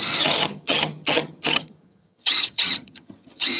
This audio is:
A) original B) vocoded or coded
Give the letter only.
B